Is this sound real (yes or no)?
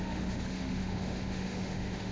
no